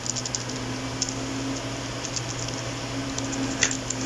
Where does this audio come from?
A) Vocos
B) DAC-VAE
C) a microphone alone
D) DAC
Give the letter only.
C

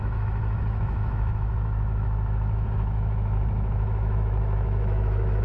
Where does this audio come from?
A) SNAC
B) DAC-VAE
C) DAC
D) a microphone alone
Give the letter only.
B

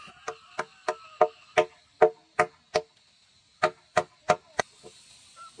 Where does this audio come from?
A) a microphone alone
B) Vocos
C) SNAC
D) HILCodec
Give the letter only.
A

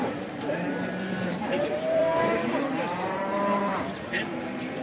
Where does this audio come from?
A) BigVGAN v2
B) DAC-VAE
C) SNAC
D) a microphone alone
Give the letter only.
A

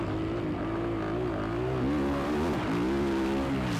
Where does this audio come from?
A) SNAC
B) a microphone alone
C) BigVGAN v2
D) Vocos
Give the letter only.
B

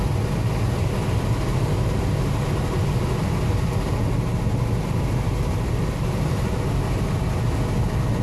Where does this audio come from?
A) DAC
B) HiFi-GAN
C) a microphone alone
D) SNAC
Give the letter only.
C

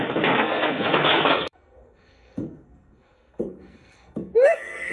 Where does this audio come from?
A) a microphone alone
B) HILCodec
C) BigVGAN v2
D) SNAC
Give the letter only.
D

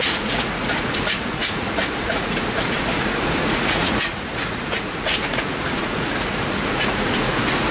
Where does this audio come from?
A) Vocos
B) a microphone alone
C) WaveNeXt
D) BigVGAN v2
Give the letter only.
A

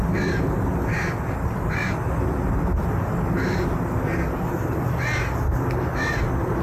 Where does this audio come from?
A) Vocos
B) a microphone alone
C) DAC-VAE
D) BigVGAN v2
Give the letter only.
B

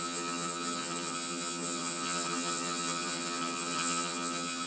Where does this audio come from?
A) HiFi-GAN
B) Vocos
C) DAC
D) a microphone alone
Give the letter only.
A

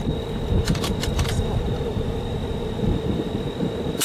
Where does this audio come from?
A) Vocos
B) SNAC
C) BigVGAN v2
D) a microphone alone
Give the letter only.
C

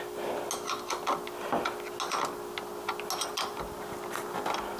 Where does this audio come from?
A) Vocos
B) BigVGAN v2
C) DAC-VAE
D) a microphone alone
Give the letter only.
D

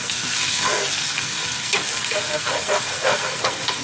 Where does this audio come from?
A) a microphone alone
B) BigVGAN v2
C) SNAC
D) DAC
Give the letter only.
C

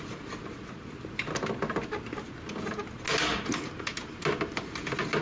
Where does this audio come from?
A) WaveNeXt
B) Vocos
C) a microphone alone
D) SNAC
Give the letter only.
C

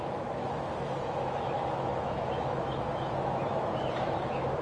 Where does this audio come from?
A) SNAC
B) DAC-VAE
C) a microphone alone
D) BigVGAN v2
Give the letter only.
B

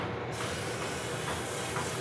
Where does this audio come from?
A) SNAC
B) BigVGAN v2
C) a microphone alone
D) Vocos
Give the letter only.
C